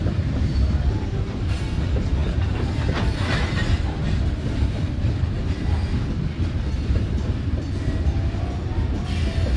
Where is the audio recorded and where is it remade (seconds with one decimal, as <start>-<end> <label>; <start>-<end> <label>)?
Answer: 0.0-9.6 remade